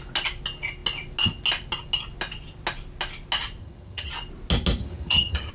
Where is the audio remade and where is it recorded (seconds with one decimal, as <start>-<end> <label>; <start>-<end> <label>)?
0.0-3.6 recorded; 3.6-4.1 remade; 4.1-4.8 recorded; 4.8-5.5 remade